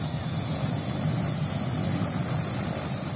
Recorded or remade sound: recorded